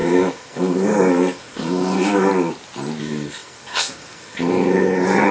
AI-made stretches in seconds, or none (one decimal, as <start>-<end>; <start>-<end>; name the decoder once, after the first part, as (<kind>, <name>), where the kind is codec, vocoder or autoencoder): 0.0-2.3 (codec, SNAC); 3.0-5.3